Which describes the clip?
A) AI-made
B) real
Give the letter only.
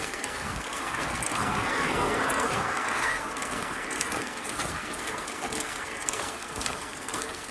A